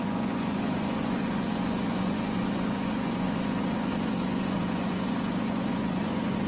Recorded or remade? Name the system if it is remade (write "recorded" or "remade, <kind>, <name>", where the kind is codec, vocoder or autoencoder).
remade, vocoder, Vocos